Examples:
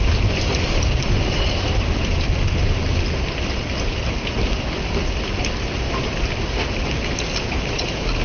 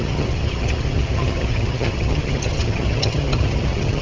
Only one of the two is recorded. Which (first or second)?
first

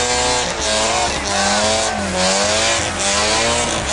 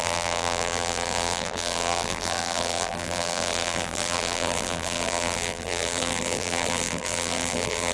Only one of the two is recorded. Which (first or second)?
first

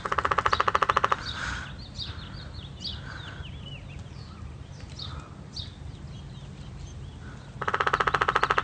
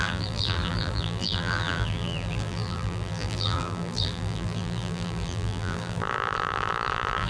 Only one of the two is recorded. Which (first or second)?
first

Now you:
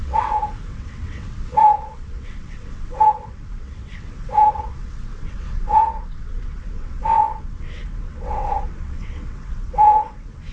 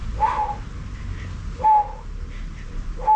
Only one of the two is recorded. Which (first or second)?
second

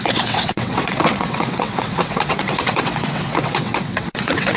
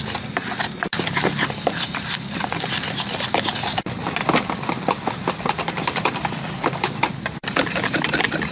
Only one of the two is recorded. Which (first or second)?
second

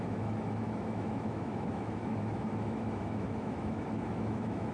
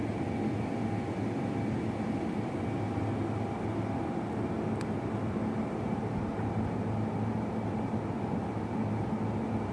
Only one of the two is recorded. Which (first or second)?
second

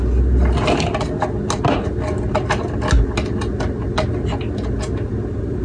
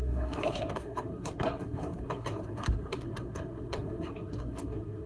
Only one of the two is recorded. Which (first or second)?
first